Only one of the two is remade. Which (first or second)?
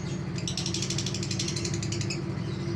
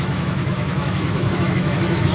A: second